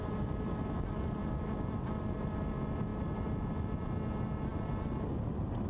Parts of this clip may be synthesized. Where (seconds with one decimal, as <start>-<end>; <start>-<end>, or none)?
none